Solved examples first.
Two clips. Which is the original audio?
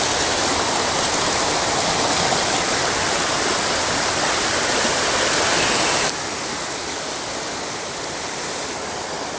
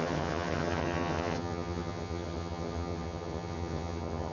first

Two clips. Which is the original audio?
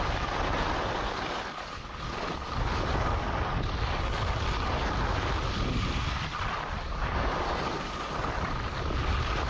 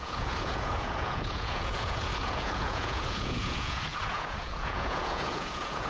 first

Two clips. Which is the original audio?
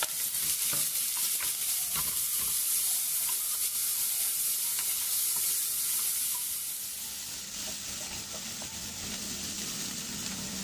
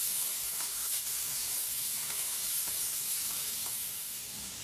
first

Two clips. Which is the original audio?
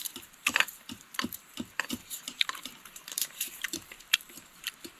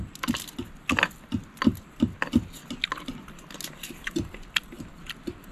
second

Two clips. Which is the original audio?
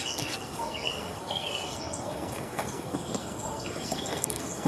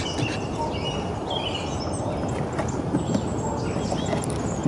second